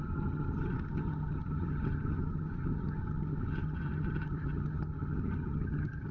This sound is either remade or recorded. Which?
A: remade